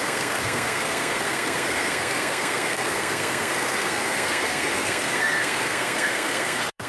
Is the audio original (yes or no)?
no